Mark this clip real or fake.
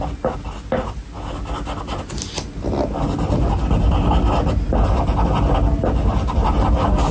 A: real